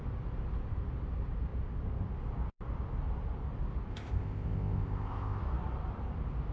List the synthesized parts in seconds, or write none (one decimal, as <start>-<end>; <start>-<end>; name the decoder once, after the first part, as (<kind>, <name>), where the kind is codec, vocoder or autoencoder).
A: 3.9-5.4 (codec, ZipCodec)